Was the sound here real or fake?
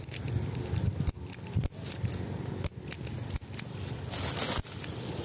real